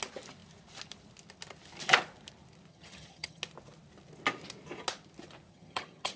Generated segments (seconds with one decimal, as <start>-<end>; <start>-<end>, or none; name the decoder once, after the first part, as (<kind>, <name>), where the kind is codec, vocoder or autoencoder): 2.7-3.4 (vocoder, HiFi-GAN); 5.5-6.2